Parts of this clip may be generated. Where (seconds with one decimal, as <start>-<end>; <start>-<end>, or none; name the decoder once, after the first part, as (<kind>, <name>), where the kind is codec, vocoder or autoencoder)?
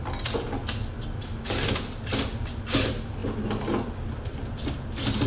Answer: none